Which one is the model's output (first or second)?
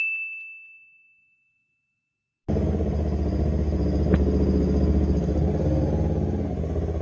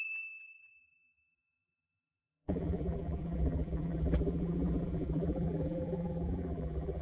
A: second